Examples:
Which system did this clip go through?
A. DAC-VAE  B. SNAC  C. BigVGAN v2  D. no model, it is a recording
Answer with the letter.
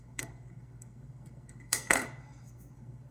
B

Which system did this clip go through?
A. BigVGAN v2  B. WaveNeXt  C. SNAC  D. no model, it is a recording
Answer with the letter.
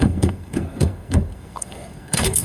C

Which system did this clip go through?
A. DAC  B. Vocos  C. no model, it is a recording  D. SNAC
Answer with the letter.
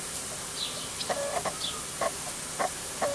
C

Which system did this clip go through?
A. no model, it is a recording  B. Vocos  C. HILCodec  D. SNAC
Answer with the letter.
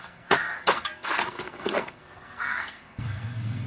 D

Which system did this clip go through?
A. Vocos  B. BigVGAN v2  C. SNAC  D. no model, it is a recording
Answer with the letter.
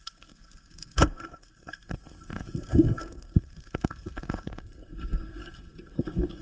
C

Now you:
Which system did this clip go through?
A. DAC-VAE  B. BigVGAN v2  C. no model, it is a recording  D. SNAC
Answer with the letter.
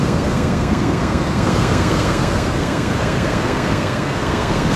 D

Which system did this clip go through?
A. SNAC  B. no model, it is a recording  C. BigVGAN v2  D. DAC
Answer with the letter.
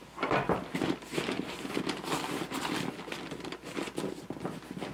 B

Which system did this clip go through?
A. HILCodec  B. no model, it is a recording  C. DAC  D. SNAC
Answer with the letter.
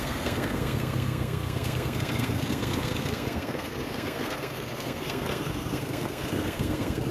D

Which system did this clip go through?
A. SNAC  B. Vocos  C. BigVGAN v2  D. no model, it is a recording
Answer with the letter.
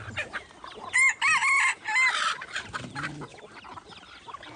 D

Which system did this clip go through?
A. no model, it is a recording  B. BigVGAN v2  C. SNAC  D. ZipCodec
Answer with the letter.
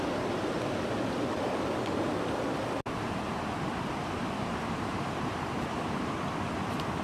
A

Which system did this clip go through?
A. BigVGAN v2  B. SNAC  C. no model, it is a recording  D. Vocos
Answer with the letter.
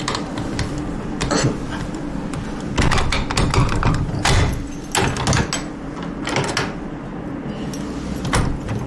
C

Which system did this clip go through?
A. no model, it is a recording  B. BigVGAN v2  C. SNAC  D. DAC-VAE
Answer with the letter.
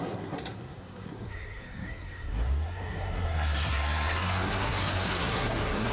C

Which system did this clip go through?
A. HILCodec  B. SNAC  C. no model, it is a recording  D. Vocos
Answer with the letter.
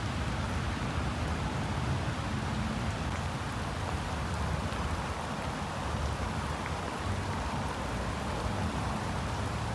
C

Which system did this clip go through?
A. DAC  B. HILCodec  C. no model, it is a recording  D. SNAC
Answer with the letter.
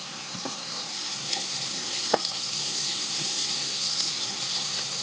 D